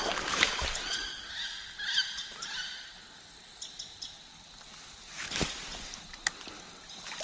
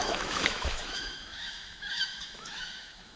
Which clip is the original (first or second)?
first